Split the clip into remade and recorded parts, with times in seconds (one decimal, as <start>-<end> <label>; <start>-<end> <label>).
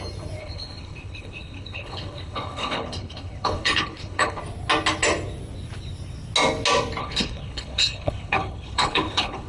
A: 0.0-0.4 recorded; 0.4-4.4 remade; 4.4-7.0 recorded; 7.0-9.5 remade